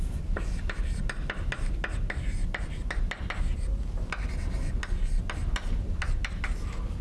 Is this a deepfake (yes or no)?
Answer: no